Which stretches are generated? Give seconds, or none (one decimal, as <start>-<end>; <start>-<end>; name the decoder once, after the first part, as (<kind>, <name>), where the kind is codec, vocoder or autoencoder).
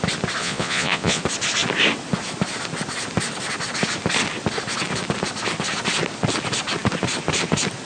0.4-1.2 (vocoder, Vocos)